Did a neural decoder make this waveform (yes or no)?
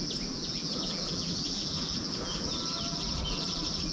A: yes